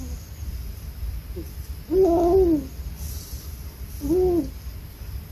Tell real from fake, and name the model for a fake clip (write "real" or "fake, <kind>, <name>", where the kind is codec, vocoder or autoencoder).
real